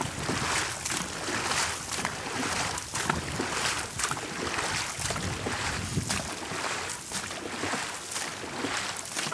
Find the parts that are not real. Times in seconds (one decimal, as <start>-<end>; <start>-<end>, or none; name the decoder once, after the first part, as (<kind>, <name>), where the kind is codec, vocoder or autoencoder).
none